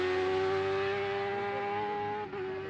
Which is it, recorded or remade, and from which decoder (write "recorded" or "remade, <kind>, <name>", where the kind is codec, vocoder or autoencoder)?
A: recorded